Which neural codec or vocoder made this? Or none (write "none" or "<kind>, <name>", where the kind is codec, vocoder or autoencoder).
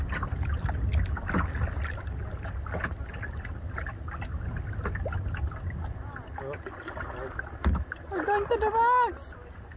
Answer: none